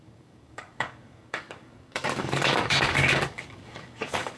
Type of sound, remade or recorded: remade